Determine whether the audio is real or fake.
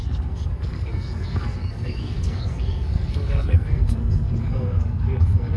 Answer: fake